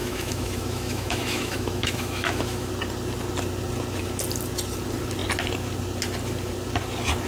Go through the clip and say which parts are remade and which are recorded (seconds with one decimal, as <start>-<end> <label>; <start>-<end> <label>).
0.0-2.7 remade; 2.7-7.3 recorded